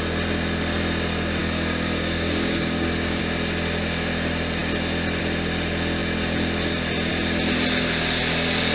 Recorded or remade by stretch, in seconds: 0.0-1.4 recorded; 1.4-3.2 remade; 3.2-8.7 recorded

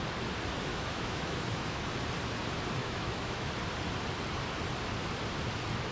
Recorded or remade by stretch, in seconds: 0.0-0.7 recorded; 0.7-1.8 remade; 1.8-2.8 recorded; 2.8-3.5 remade; 3.5-5.9 recorded

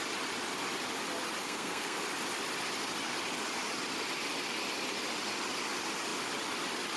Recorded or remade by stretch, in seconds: 0.0-1.4 recorded; 1.4-2.0 remade; 2.0-7.0 recorded

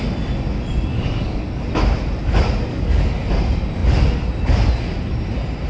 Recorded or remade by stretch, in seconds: 0.0-0.9 recorded; 0.9-1.6 remade; 1.6-2.7 recorded; 2.7-3.3 remade; 3.3-5.7 recorded

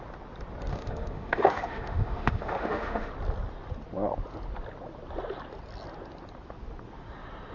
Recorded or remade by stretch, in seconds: 0.0-0.7 recorded; 0.7-3.1 remade; 3.1-7.5 recorded

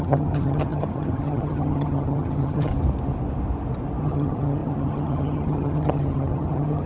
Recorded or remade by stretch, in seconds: 0.0-2.7 remade; 2.7-4.0 recorded; 4.0-6.9 remade

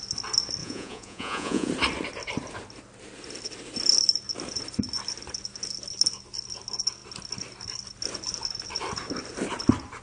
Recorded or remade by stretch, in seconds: 0.0-0.6 recorded; 0.6-1.7 remade; 1.7-10.0 recorded

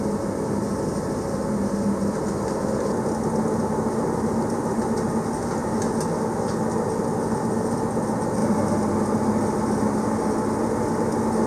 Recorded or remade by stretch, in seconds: 0.0-11.5 recorded